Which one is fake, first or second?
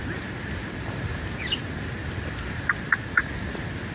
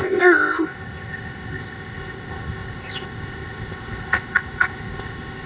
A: second